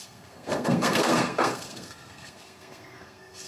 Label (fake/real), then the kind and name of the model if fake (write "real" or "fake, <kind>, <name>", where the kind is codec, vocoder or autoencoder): fake, codec, SNAC